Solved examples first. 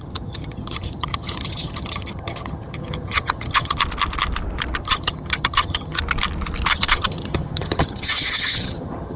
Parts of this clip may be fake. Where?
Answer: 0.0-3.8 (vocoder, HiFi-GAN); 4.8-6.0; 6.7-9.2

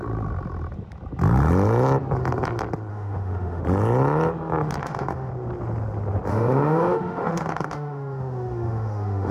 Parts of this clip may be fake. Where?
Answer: 2.9-3.6 (autoencoder, DAC-VAE); 4.8-5.3; 6.3-9.3

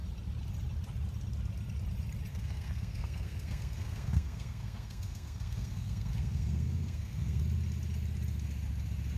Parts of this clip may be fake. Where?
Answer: 2.3-7.4 (codec, SNAC)

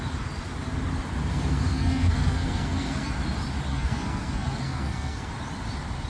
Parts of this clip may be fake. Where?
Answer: 1.3-3.1 (codec, SNAC); 3.7-5.3

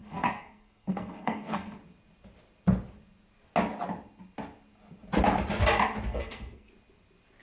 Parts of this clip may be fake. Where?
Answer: 0.0-1.8 (codec, SNAC); 6.1-6.7

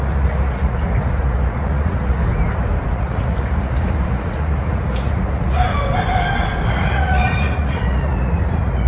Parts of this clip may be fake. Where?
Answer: 0.0-2.2 (vocoder, Vocos); 2.9-5.7; 6.7-8.9